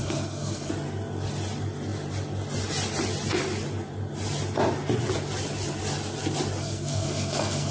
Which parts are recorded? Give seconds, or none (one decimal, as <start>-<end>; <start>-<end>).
0.7-6.6